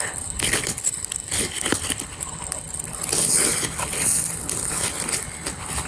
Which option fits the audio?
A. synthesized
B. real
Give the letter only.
A